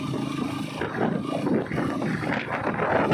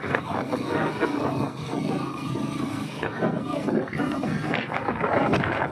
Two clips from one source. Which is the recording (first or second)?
first